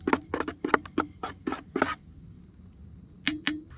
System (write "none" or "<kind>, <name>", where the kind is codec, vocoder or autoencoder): none